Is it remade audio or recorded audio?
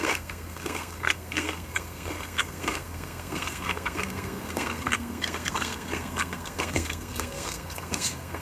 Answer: remade